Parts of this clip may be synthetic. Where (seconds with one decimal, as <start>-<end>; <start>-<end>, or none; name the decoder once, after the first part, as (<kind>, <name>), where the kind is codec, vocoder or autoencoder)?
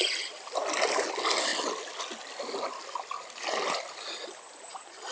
none